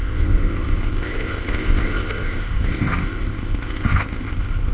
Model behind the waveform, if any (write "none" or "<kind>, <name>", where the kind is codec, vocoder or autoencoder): codec, ZipCodec